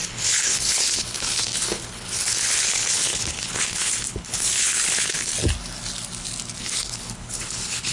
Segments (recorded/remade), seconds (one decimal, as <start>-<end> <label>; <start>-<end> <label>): 0.0-5.3 remade; 5.3-6.6 recorded; 6.6-7.9 remade